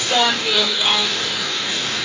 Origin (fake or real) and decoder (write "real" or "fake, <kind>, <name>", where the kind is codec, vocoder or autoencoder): fake, codec, DAC